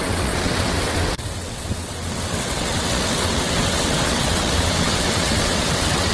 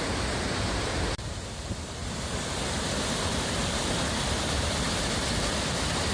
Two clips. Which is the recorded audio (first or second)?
second